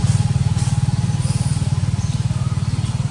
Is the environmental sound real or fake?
real